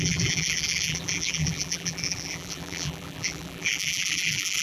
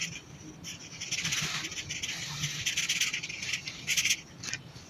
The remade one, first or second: first